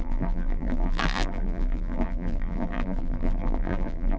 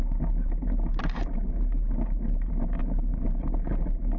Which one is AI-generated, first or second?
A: first